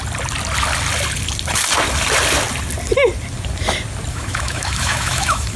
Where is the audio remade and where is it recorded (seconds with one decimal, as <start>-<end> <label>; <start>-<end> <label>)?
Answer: 0.0-4.1 recorded; 4.1-5.6 remade